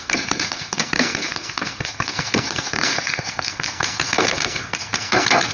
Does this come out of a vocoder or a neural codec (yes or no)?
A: yes